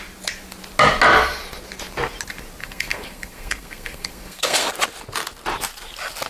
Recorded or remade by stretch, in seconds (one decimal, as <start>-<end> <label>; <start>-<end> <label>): 0.0-2.6 recorded; 2.6-4.7 remade; 4.7-6.3 recorded

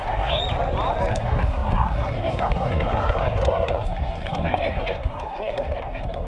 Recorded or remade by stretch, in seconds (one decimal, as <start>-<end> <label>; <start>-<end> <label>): 0.0-0.4 remade; 0.4-1.1 recorded; 1.1-6.3 remade